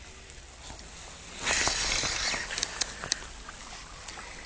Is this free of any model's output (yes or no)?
yes